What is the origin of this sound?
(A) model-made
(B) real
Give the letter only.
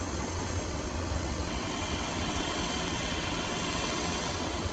A